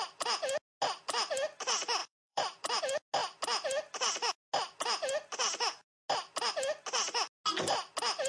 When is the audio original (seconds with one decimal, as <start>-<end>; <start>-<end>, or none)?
0.0-2.0; 2.8-8.3